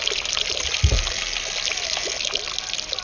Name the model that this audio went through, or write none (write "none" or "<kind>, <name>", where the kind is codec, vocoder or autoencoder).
none